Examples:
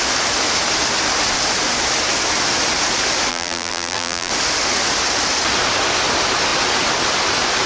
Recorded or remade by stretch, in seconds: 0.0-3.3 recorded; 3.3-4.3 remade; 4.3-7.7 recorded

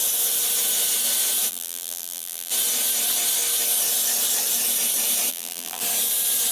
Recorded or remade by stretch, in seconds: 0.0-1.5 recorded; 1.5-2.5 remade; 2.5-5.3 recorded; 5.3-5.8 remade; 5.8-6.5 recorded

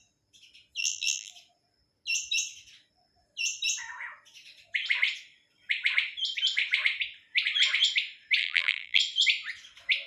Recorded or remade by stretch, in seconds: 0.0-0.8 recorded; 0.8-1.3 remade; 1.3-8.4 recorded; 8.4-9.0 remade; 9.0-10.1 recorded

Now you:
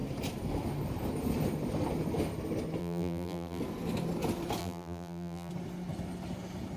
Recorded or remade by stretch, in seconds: 0.0-2.8 recorded; 2.8-3.6 remade; 3.6-4.6 recorded; 4.6-5.5 remade; 5.5-6.8 recorded